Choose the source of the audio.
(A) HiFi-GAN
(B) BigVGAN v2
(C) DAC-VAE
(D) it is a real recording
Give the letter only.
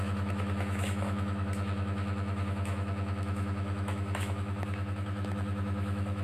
C